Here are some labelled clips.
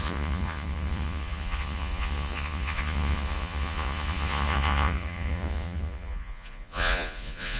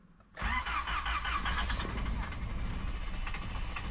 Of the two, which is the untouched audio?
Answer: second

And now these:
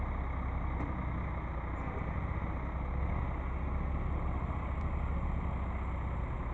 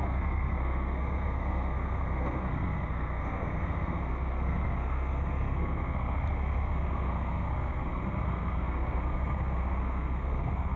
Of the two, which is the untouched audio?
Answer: first